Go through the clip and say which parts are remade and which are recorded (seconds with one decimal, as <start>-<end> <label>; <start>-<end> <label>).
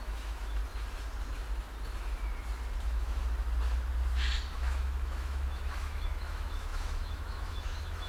0.0-0.6 remade; 0.6-2.8 recorded; 2.8-3.2 remade; 3.2-4.5 recorded; 4.5-8.1 remade